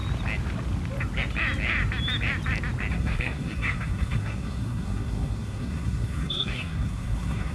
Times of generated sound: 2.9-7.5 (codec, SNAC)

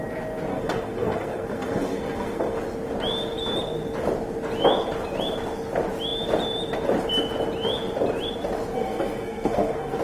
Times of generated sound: 0.5-2.6 (codec, SNAC); 8.8-10.0

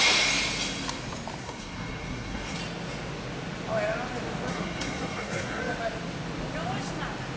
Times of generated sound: 1.4-2.6 (codec, SNAC); 4.5-5.6

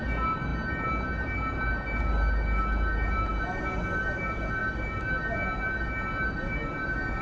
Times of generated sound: none

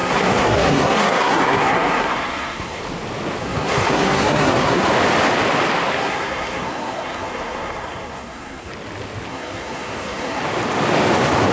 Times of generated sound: 0.0-2.8 (codec, SNAC); 3.4-4.8; 6.0-8.7; 9.3-10.4